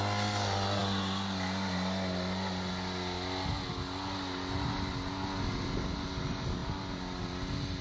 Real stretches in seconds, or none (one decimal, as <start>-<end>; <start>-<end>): 0.0-7.8